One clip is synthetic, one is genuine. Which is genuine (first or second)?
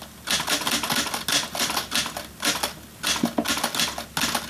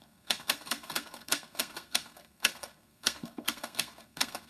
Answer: first